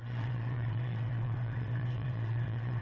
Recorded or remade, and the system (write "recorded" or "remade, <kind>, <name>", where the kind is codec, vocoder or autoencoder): remade, vocoder, WaveNeXt